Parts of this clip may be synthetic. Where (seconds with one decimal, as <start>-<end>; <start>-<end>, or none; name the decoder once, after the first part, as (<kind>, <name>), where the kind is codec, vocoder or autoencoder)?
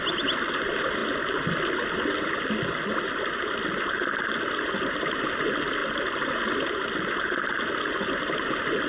none